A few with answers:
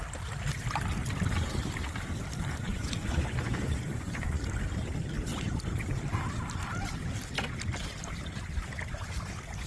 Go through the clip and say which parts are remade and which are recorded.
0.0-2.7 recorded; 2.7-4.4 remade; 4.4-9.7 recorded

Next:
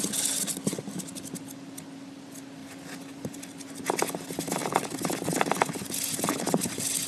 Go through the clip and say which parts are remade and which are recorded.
0.0-2.6 recorded; 2.6-3.4 remade; 3.4-4.6 recorded; 4.6-6.3 remade; 6.3-7.1 recorded

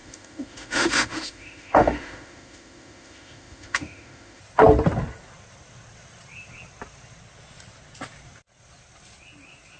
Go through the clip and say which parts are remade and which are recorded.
0.0-4.4 remade; 4.4-9.8 recorded

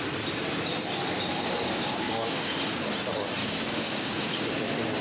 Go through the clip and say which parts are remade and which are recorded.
0.0-1.3 recorded; 1.3-2.6 remade; 2.6-3.4 recorded; 3.4-4.5 remade; 4.5-5.0 recorded